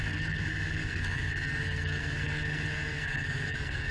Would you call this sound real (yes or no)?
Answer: no